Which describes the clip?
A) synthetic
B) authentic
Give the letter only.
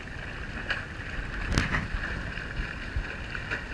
A